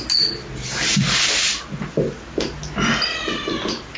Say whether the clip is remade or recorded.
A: recorded